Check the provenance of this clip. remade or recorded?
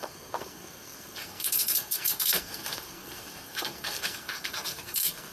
remade